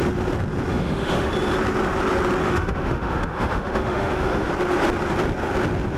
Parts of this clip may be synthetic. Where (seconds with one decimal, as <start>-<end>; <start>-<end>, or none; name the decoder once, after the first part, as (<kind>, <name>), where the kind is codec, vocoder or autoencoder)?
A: 0.7-1.3 (autoencoder, DAC-VAE); 2.4-4.5